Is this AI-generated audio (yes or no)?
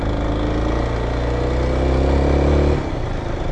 no